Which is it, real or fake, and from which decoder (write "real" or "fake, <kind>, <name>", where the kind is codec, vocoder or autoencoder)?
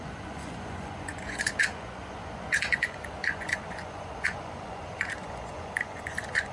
fake, vocoder, Vocos